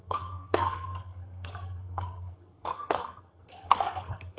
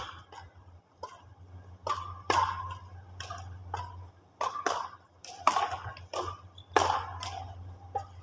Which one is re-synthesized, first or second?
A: first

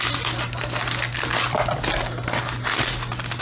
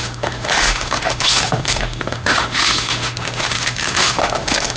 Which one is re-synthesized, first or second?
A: second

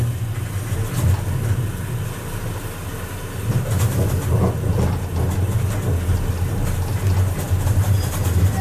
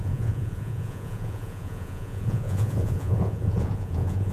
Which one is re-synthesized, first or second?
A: second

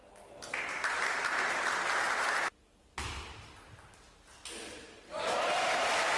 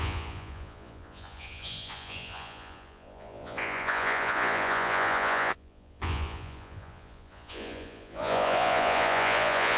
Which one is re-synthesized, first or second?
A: second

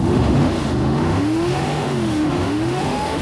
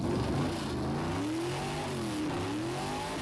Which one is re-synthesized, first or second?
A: first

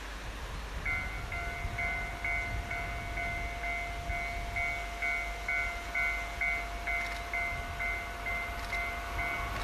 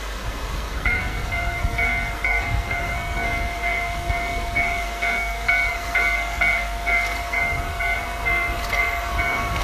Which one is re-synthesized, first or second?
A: second